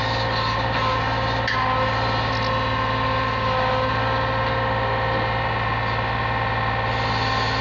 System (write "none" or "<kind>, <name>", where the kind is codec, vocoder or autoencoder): none